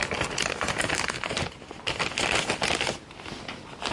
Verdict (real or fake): real